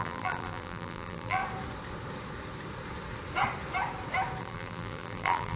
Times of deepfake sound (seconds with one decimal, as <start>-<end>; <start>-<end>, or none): 0.0-1.4; 4.4-5.6